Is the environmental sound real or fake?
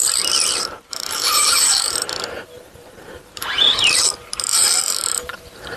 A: fake